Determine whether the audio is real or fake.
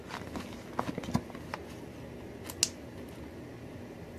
real